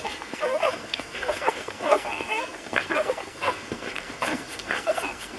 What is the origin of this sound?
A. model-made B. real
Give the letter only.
A